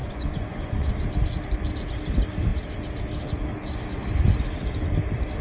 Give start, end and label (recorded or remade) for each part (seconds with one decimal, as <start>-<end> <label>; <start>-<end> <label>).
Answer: 0.0-0.9 remade; 0.9-5.4 recorded